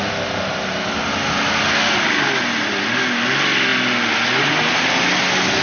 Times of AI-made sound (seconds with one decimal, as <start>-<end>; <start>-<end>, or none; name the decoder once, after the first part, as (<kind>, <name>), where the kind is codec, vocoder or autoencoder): none

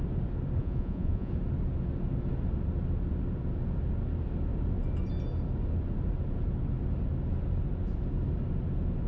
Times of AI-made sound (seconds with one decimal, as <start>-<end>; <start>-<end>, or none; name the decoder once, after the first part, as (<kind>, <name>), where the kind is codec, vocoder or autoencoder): 0.6-1.3 (vocoder, Vocos)

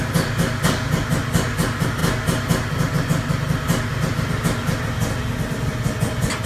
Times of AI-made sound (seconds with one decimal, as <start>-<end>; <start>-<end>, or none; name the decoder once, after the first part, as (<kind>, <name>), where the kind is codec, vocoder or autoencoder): none

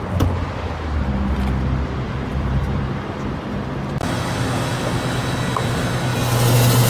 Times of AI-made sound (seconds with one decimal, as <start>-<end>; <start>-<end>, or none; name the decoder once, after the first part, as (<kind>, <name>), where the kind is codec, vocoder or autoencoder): 2.3-3.9 (vocoder, BigVGAN v2)

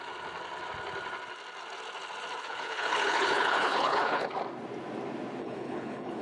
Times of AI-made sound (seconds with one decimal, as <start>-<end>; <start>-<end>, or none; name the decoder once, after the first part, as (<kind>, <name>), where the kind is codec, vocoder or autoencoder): 2.4-4.3 (codec, HILCodec); 5.4-6.2

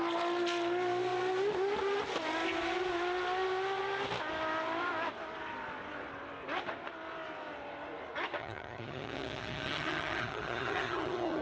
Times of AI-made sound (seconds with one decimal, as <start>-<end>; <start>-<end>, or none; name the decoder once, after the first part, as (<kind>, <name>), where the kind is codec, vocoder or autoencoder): 8.4-11.4 (vocoder, HiFi-GAN)

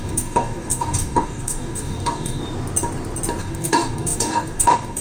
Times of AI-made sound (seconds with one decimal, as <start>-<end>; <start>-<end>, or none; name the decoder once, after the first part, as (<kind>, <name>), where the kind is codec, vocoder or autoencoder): 0.0-2.4 (codec, DAC); 3.4-5.0